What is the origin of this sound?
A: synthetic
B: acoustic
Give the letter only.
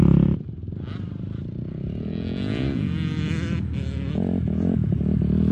B